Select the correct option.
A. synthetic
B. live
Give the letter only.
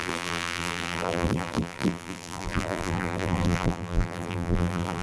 A